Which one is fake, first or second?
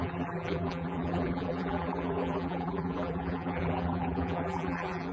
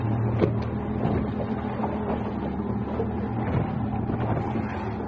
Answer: first